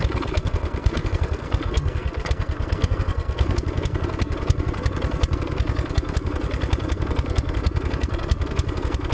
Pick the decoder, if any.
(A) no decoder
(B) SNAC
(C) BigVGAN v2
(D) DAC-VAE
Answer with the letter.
B